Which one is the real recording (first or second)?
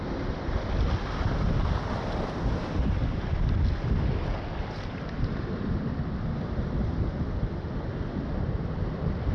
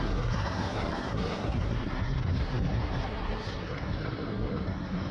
first